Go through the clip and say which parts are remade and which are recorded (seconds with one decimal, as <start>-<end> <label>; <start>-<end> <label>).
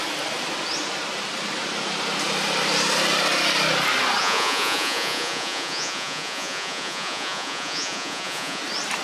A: 0.0-4.2 recorded; 4.2-8.6 remade; 8.6-9.0 recorded